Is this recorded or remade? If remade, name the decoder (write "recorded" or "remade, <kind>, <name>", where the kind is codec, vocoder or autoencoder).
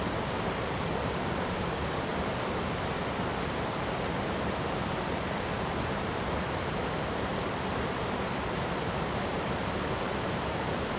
remade, vocoder, BigVGAN v2